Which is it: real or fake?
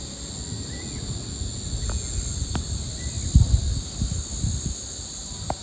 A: real